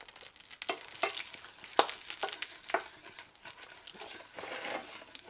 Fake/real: real